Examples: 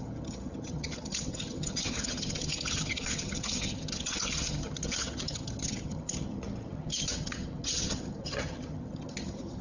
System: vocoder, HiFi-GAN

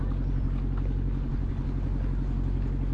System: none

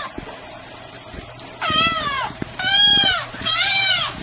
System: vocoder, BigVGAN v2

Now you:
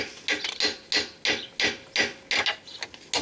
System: none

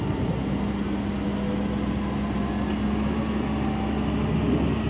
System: none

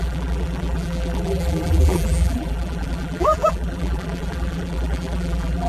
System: vocoder, BigVGAN v2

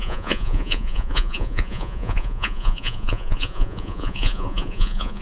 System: vocoder, Vocos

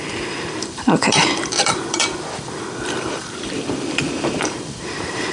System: vocoder, BigVGAN v2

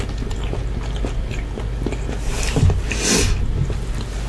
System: none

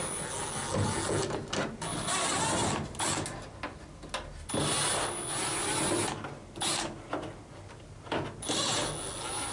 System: none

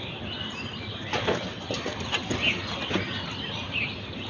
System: none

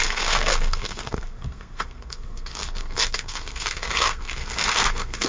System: codec, SNAC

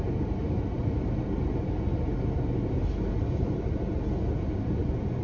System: none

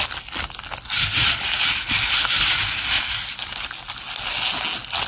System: none